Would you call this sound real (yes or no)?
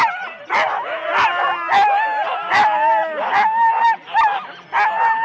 yes